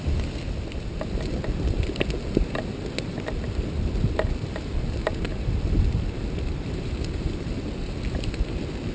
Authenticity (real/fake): real